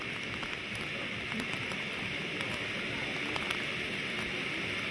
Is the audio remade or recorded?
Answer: recorded